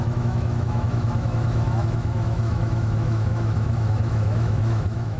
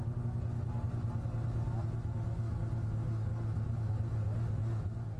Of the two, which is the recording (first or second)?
second